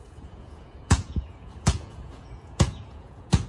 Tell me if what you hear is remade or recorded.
remade